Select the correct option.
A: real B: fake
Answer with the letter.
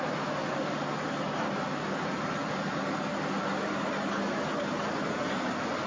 A